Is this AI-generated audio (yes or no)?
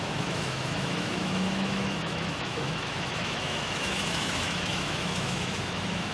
yes